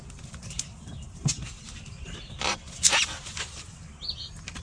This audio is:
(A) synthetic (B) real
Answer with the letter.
B